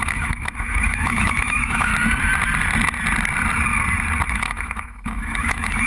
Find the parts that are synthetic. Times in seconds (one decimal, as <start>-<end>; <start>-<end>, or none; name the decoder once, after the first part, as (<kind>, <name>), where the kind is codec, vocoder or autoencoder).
0.0-1.9 (autoencoder, DAC-VAE); 4.3-5.9